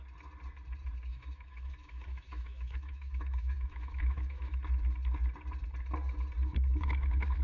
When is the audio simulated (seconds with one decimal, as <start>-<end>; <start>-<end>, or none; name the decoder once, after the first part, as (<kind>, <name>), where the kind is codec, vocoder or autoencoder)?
1.1-4.6 (autoencoder, DAC-VAE); 6.5-7.4